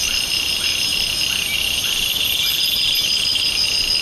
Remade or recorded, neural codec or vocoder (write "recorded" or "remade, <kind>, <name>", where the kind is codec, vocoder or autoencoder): recorded